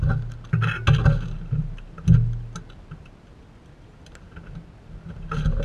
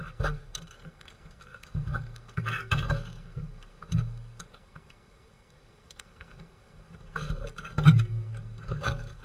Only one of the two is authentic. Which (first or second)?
first